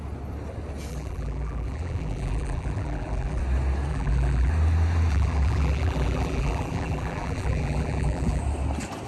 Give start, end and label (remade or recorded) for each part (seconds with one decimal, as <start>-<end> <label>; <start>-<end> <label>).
0.0-0.9 recorded; 0.9-3.4 remade; 3.4-3.9 recorded; 3.9-4.5 remade; 4.5-5.1 recorded; 5.1-8.4 remade; 8.4-9.1 recorded